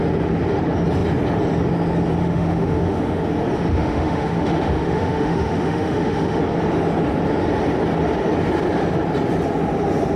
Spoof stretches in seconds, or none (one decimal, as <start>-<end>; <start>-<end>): 2.2-3.2; 3.7-6.4